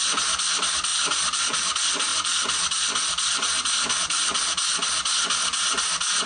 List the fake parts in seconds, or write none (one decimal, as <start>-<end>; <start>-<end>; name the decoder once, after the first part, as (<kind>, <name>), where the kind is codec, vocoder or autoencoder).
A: 0.9-1.4 (vocoder, BigVGAN v2); 2.1-4.0

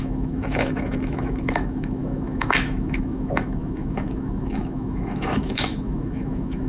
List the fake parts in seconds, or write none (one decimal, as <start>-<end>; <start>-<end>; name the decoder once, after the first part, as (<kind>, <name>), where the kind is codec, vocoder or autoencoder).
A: 0.0-6.7 (autoencoder, DAC-VAE)

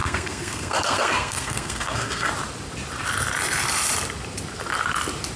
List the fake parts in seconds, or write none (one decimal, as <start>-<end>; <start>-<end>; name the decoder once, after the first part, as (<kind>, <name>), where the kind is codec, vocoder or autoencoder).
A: 0.0-2.3 (codec, SNAC)